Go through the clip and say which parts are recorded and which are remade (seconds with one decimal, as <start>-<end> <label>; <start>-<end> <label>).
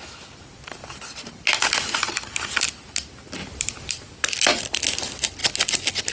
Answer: 0.0-3.4 recorded; 3.4-3.9 remade; 3.9-6.1 recorded